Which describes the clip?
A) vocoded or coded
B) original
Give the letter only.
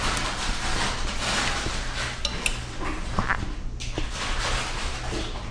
B